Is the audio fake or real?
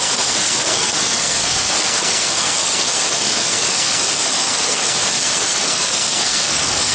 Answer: fake